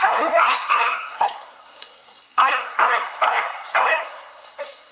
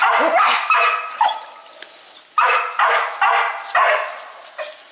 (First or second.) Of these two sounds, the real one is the second